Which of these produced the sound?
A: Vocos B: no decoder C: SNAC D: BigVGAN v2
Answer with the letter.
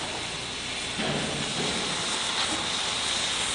B